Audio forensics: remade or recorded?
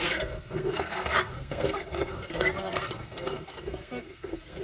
remade